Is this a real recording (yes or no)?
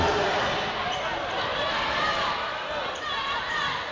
yes